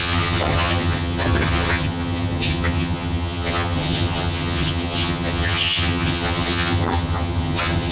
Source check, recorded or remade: remade